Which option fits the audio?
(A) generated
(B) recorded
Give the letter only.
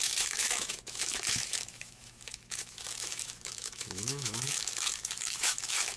A